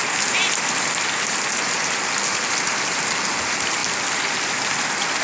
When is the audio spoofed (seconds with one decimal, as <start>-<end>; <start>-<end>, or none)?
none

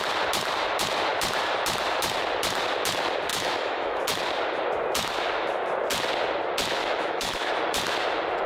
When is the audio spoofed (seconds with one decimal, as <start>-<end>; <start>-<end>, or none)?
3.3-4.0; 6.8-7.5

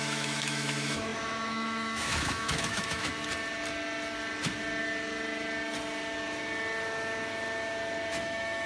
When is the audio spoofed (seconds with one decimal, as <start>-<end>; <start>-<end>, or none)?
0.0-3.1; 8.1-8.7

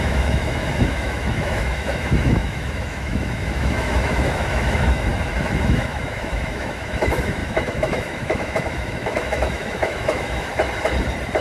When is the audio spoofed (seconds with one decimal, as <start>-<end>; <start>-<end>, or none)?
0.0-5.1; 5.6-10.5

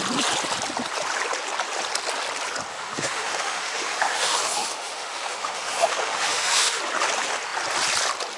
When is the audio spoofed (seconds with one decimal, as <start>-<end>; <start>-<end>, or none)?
2.7-6.8

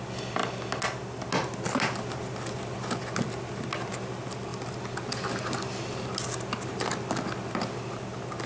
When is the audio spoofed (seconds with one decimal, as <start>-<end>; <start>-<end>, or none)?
none

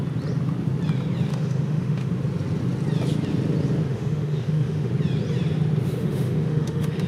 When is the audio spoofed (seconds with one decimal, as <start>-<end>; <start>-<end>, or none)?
1.3-2.1; 3.9-4.9; 6.0-7.1